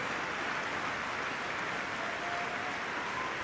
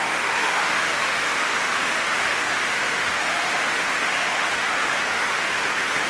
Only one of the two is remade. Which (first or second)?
second